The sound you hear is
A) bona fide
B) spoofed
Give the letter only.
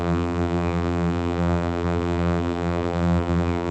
B